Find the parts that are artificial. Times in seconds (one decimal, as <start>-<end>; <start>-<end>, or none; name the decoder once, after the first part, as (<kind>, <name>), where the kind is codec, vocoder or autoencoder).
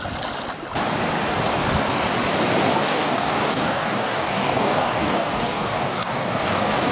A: 2.7-6.9 (codec, DAC)